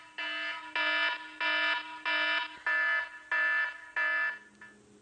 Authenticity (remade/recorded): recorded